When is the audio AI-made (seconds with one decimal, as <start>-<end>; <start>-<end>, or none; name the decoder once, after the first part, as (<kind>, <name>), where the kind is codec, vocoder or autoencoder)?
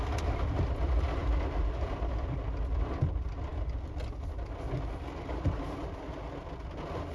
none